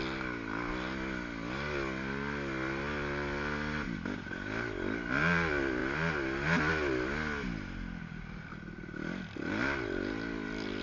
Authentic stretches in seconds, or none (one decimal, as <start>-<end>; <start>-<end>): 0.0-10.8